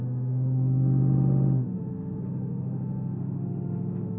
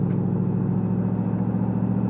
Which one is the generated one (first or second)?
first